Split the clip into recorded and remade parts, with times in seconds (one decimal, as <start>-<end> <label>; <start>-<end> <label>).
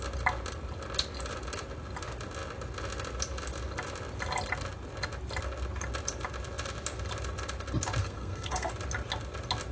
0.0-8.0 recorded; 8.0-8.7 remade; 8.7-9.7 recorded